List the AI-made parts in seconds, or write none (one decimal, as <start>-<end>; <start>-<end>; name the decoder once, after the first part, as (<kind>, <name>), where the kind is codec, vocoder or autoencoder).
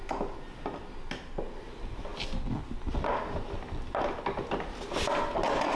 none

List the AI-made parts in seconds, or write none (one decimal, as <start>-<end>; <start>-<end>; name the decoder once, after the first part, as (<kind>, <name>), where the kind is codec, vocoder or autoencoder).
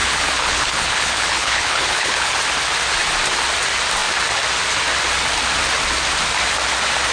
0.0-2.4 (codec, HILCodec)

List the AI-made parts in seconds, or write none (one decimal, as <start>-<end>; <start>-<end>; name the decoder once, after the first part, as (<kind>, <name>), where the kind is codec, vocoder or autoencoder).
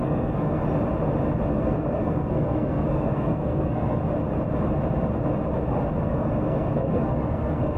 0.0-0.6 (codec, SNAC); 1.5-4.0; 6.0-7.8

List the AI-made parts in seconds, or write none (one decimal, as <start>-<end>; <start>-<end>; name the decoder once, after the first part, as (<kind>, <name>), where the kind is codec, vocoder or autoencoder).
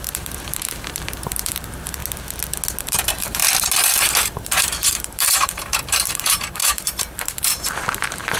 0.0-2.0 (vocoder, BigVGAN v2); 2.8-3.4; 4.2-8.4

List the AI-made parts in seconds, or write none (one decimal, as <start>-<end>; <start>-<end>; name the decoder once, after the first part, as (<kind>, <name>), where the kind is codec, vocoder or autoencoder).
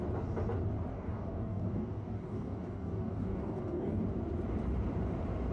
0.9-4.0 (codec, DAC)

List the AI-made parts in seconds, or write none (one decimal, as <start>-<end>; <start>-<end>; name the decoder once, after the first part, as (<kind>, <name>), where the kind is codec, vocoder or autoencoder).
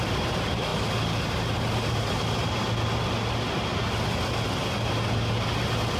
none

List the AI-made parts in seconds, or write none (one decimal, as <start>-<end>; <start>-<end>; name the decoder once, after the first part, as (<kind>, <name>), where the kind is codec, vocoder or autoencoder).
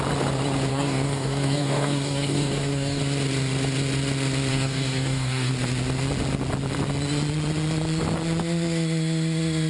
0.7-3.0 (codec, DAC); 4.5-5.5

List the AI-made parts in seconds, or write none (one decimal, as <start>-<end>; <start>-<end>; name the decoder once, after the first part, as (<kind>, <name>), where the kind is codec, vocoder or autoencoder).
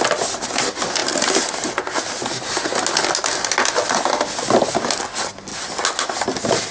none